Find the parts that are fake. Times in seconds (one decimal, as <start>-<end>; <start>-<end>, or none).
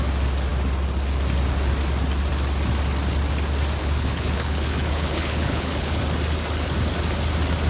3.8-6.0